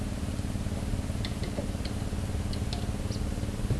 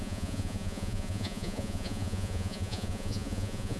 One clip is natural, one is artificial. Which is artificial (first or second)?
second